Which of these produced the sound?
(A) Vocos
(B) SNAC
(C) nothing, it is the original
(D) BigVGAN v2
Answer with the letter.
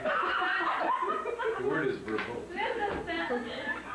C